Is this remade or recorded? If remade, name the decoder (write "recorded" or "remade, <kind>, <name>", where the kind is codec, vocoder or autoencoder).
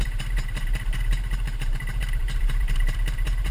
remade, vocoder, BigVGAN v2